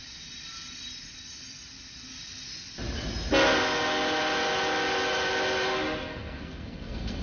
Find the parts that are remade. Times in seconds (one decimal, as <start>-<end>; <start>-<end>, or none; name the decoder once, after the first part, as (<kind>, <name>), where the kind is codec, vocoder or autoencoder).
6.1-7.2 (codec, SNAC)